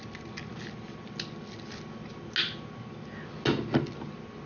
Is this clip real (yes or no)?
yes